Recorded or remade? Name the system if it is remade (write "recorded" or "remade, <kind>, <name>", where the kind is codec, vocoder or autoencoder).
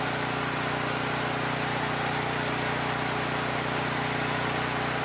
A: recorded